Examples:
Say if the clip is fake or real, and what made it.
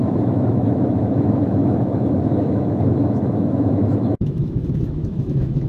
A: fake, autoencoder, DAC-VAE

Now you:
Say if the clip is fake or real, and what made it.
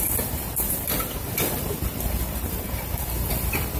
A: real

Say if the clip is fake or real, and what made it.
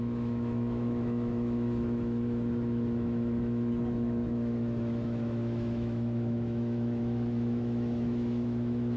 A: fake, autoencoder, DAC-VAE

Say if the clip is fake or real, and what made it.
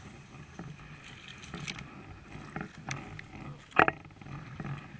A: real